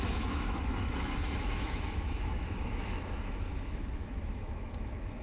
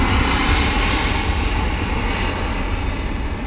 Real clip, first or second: second